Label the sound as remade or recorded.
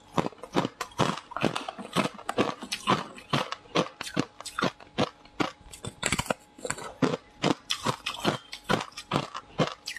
recorded